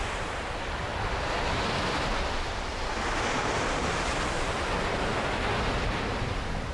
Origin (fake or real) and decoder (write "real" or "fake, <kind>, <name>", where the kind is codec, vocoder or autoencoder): real